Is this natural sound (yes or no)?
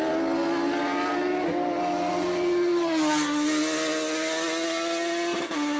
yes